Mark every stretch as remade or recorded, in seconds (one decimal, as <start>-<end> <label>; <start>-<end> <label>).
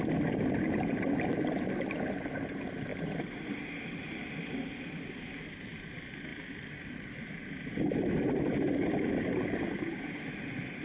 0.0-2.9 recorded; 2.9-3.6 remade; 3.6-4.4 recorded; 4.4-5.0 remade; 5.0-10.8 recorded